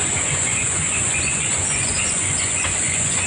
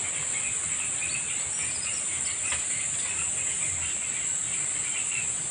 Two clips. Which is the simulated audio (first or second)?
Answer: first